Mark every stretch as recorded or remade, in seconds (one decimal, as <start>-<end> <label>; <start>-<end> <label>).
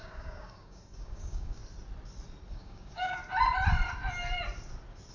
0.0-1.6 remade; 1.6-2.5 recorded; 2.5-3.2 remade; 3.2-5.1 recorded